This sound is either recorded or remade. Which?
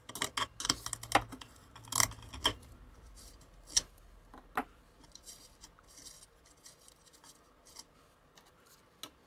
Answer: recorded